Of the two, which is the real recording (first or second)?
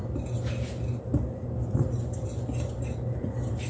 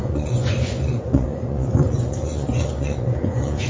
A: first